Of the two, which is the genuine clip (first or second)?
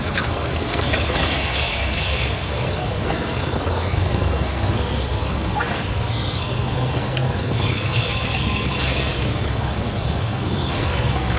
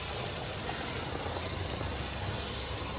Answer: second